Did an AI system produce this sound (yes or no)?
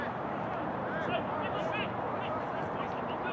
yes